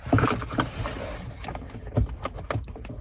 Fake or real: real